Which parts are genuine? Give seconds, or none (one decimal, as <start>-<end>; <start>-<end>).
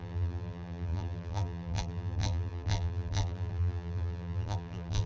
none